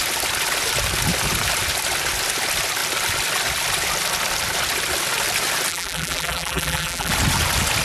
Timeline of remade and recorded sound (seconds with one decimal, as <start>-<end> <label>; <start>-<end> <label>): 0.0-5.7 recorded; 5.7-7.1 remade; 7.1-7.8 recorded